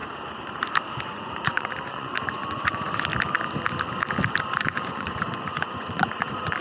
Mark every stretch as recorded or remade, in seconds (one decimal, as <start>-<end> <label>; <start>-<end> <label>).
0.0-1.0 recorded; 1.0-3.1 remade; 3.1-4.6 recorded; 4.6-6.6 remade